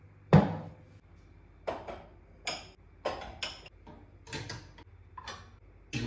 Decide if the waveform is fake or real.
real